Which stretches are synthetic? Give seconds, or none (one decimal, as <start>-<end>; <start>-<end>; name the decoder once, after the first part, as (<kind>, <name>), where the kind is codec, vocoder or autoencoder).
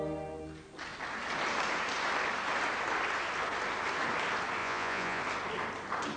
4.6-5.2 (vocoder, Vocos)